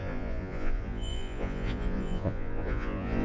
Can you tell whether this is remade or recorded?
remade